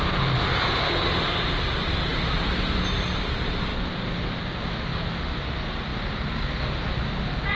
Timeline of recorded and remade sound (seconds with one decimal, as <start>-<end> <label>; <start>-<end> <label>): 0.0-7.5 recorded